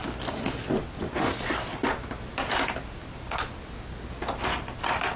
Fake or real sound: real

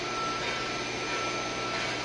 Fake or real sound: real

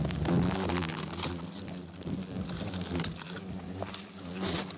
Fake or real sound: real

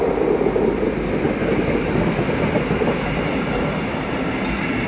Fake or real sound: real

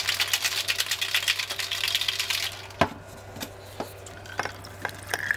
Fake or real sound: real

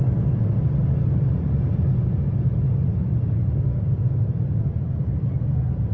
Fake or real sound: real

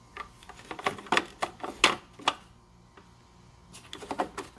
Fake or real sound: real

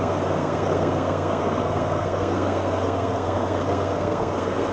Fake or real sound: fake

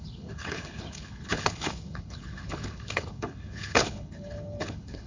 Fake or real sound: fake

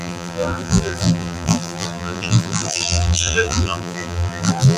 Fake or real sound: fake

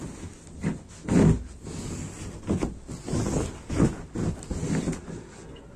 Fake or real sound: real